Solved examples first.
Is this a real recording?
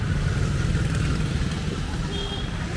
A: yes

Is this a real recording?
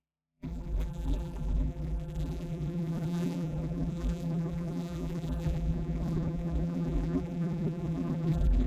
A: no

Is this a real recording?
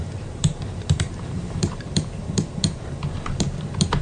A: no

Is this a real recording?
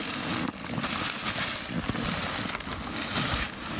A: yes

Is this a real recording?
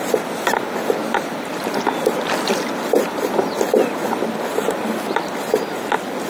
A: yes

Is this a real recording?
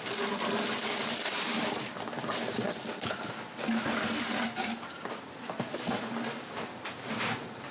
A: yes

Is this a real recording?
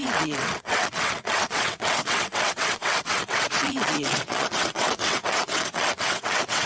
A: no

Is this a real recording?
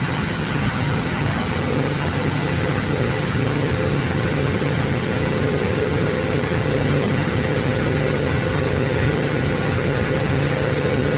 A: no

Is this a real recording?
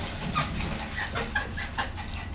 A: yes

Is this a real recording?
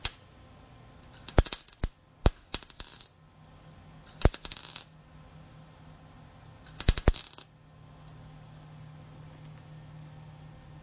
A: yes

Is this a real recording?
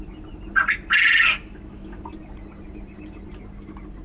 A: yes